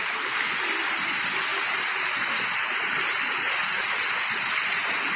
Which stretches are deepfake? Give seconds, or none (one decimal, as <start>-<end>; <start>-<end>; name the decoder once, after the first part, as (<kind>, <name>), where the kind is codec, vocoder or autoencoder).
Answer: none